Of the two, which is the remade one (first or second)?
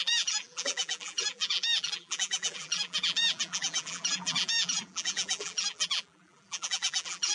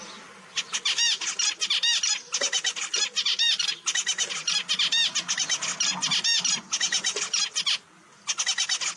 first